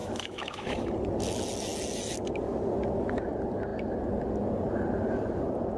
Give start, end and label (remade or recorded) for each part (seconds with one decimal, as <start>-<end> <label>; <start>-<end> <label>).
0.0-0.9 remade; 0.9-5.8 recorded